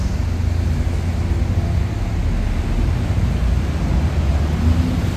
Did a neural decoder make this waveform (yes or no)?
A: no